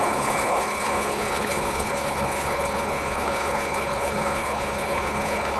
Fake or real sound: fake